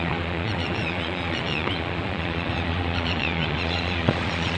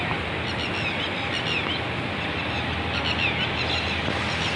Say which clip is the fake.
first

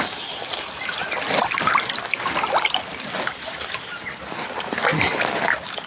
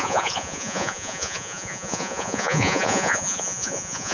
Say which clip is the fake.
second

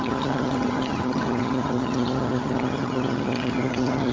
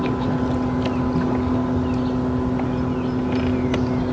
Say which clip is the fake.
first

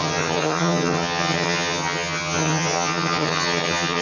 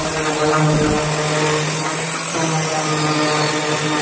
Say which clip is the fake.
first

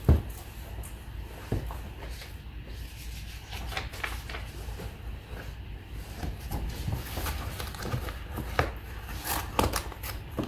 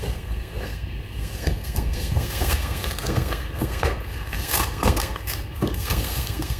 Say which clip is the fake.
second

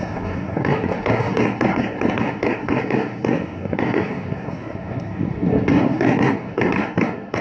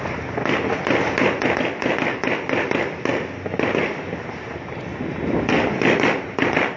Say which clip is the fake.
first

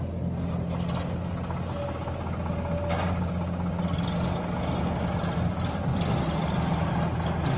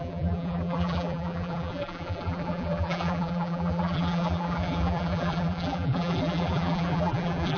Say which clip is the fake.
second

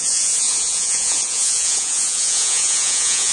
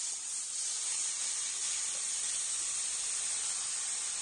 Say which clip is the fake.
first